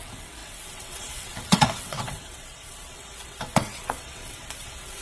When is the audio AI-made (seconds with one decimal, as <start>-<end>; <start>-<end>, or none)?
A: 0.0-5.0